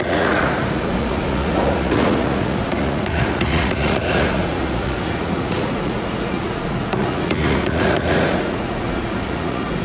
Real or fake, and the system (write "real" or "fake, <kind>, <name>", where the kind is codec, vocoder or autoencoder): fake, vocoder, Vocos